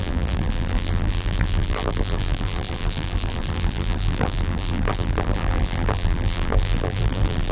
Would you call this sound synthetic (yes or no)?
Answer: yes